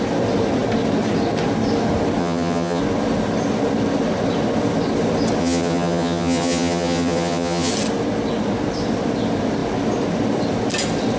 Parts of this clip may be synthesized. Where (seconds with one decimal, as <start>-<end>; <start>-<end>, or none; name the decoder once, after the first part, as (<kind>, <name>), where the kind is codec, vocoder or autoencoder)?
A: 2.2-2.8 (vocoder, HiFi-GAN); 5.4-7.7